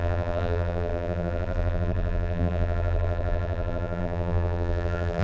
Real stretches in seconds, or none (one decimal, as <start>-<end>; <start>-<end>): none